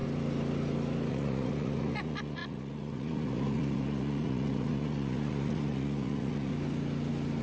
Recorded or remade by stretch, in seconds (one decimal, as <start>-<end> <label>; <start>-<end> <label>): 0.0-1.1 recorded; 1.1-6.5 remade; 6.5-7.4 recorded